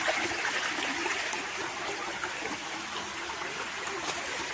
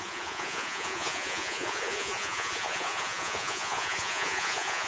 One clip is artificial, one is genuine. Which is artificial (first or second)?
second